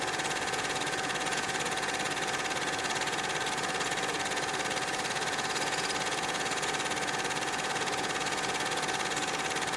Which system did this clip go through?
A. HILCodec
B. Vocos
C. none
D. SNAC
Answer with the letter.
B